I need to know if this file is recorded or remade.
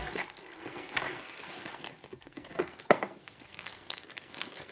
remade